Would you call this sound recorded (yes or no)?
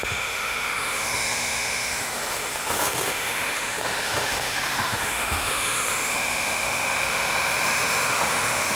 no